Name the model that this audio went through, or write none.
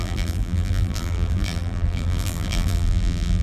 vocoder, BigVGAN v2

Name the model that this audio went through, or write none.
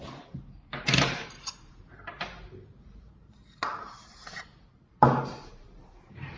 vocoder, BigVGAN v2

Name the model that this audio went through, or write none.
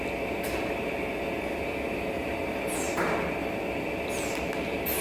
none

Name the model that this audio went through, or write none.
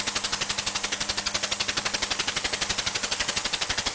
none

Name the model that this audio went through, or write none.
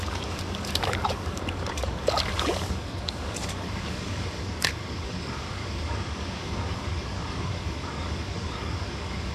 codec, DAC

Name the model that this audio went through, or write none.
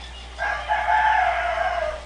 none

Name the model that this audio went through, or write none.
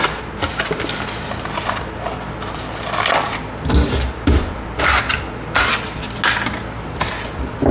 none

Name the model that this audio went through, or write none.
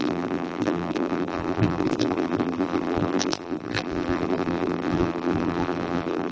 vocoder, BigVGAN v2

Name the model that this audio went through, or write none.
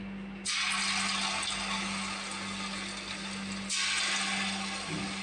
none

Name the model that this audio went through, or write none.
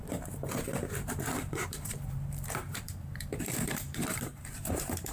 vocoder, BigVGAN v2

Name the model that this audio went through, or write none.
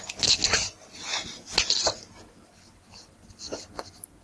none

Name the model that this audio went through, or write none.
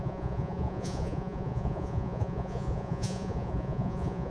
vocoder, Vocos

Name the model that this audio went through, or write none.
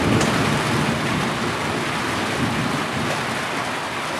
none